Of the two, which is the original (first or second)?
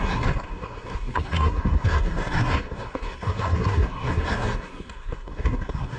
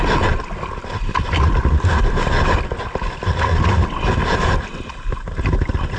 second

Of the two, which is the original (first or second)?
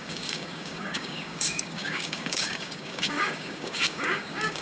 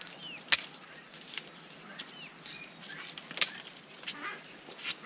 second